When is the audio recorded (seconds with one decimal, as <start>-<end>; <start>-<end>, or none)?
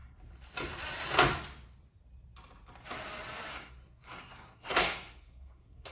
0.0-3.5